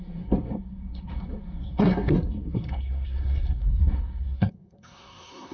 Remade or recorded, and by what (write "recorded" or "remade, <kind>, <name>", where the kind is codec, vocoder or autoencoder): remade, codec, SNAC